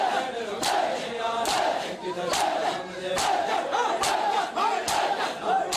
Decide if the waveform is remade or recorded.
recorded